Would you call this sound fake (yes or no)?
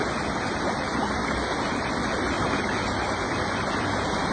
no